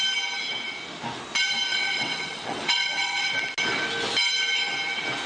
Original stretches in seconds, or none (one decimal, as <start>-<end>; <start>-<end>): 0.0-1.7; 3.3-5.3